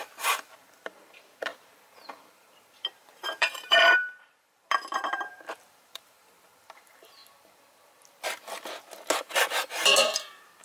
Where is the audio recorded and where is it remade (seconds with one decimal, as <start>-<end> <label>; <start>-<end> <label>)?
0.0-7.2 remade; 7.2-9.7 recorded; 9.7-10.6 remade